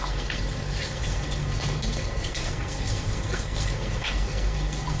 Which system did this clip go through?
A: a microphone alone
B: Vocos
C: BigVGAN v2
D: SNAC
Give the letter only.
D